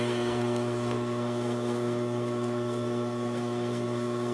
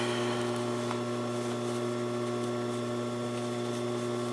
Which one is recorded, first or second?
second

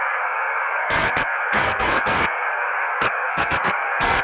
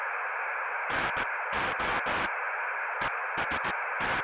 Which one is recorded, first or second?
second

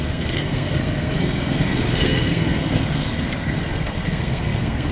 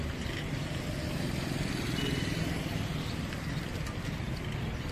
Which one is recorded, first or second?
second